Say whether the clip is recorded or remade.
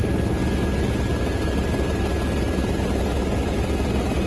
recorded